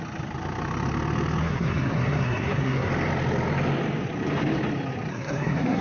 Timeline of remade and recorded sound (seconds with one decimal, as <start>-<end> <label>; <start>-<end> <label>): 0.0-1.4 recorded; 1.4-2.9 remade; 2.9-5.1 recorded; 5.1-5.8 remade